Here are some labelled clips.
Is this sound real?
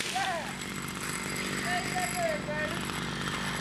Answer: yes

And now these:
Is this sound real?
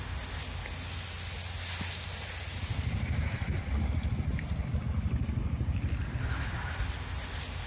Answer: yes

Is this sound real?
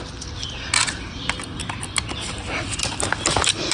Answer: yes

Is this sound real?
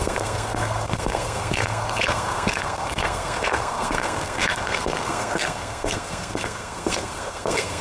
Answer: no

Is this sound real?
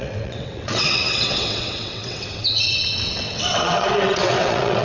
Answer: no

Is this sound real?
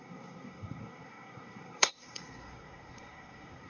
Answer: no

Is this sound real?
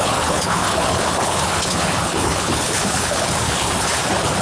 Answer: no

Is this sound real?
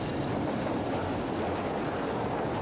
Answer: yes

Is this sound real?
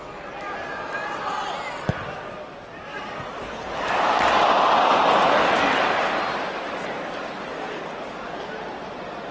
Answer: yes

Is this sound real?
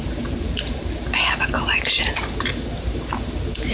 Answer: no